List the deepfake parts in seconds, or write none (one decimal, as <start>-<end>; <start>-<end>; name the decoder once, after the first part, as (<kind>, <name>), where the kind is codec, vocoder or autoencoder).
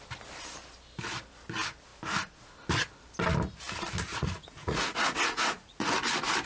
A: 4.1-5.9 (vocoder, Vocos)